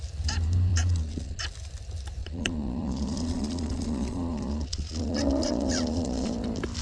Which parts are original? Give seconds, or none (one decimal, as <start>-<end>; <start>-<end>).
0.0-0.7; 1.4-2.2; 6.3-6.8